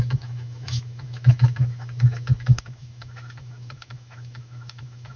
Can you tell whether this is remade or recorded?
remade